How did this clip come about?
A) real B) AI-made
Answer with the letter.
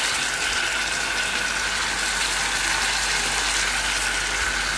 A